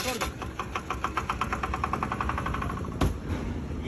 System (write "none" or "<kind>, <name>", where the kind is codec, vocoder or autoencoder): none